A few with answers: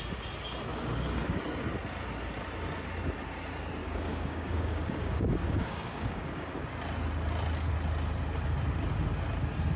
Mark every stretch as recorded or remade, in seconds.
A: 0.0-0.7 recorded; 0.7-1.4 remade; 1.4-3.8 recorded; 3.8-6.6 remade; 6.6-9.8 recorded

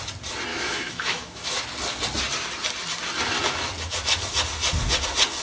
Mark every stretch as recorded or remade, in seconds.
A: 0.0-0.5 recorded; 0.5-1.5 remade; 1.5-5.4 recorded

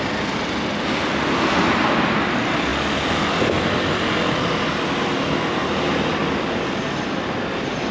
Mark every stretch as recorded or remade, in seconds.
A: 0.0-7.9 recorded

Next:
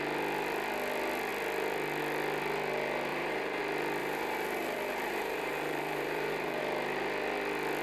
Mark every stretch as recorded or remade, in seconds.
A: 0.0-3.1 recorded; 3.1-3.6 remade; 3.6-4.0 recorded; 4.0-6.6 remade; 6.6-7.8 recorded

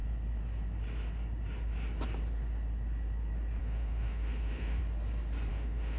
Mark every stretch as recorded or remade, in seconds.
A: 0.0-3.6 recorded; 3.6-4.8 remade; 4.8-5.5 recorded; 5.5-6.0 remade

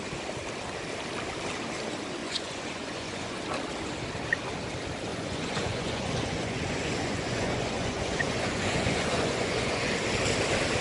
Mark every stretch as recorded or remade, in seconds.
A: 0.0-2.2 recorded; 2.2-3.4 remade; 3.4-5.1 recorded; 5.1-9.9 remade; 9.9-10.8 recorded

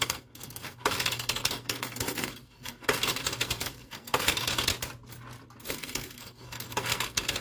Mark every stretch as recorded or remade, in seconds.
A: 0.0-4.7 remade; 4.7-5.7 recorded; 5.7-7.4 remade